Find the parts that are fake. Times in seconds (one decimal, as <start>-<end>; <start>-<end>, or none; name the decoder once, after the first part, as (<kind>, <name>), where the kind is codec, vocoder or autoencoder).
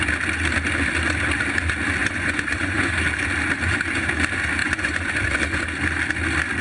2.0-2.9 (vocoder, Vocos); 4.6-5.6